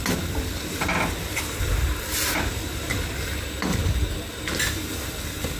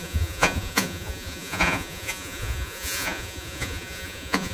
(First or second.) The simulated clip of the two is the second